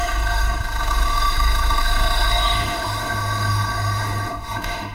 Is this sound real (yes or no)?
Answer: no